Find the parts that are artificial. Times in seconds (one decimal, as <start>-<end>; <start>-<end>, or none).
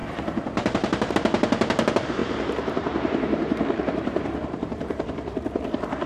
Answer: 0.0-1.1; 2.2-6.1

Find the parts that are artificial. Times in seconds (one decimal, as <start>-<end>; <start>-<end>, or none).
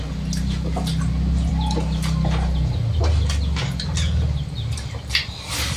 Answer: none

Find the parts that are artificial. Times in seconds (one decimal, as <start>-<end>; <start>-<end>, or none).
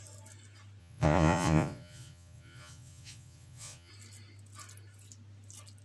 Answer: 0.8-3.9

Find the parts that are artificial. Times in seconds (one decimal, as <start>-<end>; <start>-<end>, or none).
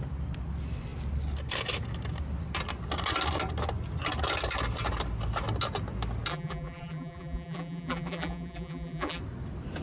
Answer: 6.3-9.2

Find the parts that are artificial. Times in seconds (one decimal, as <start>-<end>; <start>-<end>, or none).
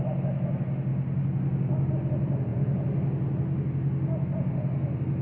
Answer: none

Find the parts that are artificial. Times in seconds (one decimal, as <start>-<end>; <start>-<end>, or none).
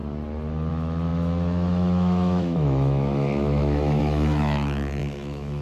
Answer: 0.7-5.6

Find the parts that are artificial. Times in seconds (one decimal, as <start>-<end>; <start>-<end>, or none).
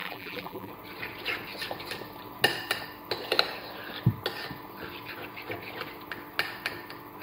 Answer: 0.0-0.7